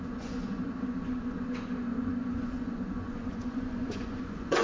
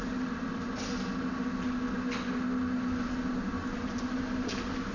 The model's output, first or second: first